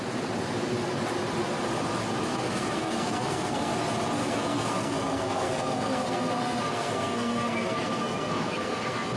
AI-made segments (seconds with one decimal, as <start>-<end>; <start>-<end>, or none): 2.3-3.7; 4.2-9.2